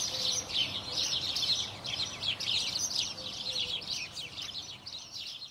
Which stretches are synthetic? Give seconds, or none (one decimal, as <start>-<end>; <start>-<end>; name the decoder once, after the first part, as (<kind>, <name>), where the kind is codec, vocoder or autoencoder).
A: 0.0-4.6 (vocoder, BigVGAN v2)